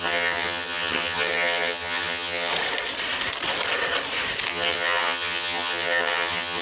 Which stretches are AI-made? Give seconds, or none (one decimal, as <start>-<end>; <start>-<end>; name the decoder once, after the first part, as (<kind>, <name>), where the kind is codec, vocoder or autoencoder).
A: 0.0-2.5 (vocoder, HiFi-GAN); 4.5-6.6